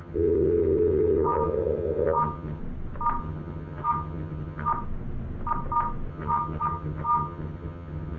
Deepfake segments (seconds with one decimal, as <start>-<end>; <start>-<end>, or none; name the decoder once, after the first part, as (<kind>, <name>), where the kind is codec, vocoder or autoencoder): 0.0-2.6 (vocoder, HiFi-GAN); 3.2-4.7; 6.1-8.2